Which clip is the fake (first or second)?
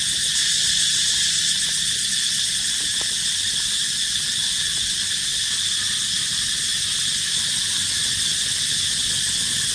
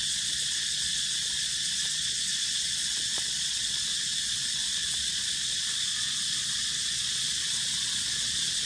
second